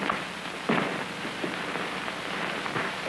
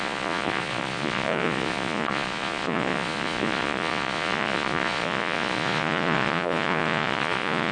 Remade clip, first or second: second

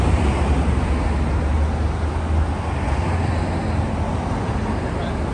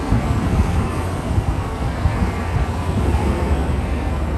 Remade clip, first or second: second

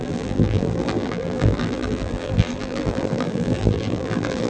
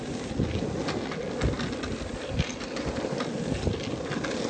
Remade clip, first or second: first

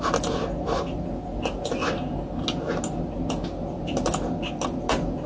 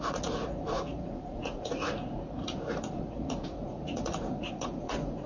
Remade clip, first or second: second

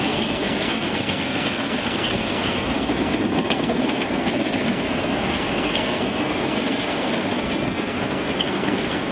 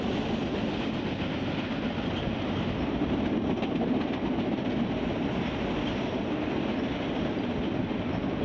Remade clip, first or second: first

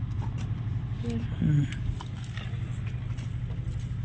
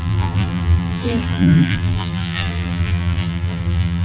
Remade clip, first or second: second